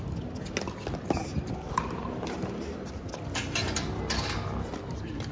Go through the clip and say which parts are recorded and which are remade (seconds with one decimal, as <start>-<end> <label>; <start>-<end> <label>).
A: 0.0-1.2 recorded; 1.2-4.0 remade; 4.0-5.3 recorded

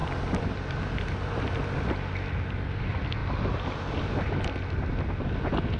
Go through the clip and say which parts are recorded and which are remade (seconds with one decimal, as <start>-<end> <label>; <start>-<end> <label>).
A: 0.0-5.8 recorded

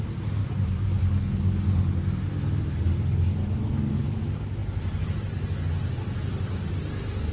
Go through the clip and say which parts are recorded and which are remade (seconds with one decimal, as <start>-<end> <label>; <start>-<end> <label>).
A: 0.0-0.4 recorded; 0.4-1.0 remade; 1.0-7.3 recorded

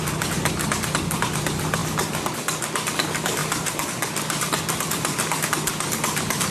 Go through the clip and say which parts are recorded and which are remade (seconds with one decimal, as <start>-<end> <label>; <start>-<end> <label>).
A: 0.0-3.4 recorded; 3.4-5.5 remade; 5.5-6.5 recorded